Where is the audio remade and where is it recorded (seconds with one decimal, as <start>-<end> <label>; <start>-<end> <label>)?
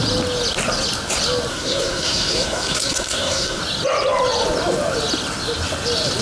0.0-1.5 recorded; 1.5-3.6 remade; 3.6-6.2 recorded